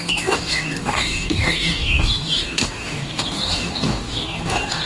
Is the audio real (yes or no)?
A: no